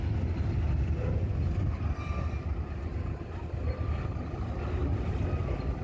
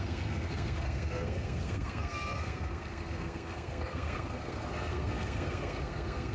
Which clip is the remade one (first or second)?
second